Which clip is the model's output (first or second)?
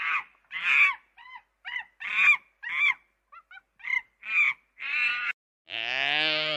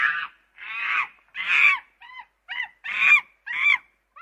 second